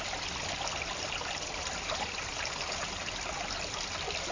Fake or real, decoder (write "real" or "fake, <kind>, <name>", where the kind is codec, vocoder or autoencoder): real